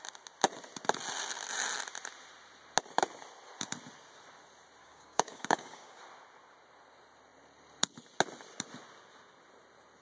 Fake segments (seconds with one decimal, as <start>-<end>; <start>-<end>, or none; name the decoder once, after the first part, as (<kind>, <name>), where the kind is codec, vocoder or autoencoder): 4.8-6.0 (codec, DAC)